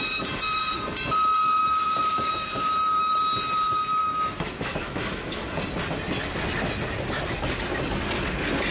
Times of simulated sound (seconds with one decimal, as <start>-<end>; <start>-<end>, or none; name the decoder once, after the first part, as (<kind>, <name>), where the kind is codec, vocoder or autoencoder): 1.6-3.1 (autoencoder, DAC-VAE); 4.0-5.6